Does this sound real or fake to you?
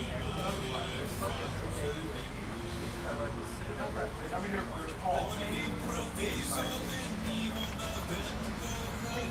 fake